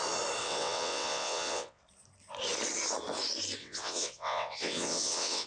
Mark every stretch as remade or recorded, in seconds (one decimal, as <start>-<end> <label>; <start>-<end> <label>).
0.0-0.4 recorded; 0.4-1.8 remade; 1.8-3.6 recorded; 3.6-5.5 remade